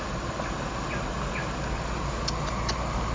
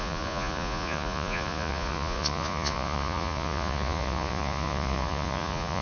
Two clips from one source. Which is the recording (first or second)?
first